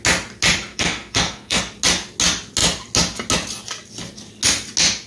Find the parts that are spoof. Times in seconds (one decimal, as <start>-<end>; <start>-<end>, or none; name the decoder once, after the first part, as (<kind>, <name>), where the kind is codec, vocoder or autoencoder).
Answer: 0.7-1.6 (codec, SNAC)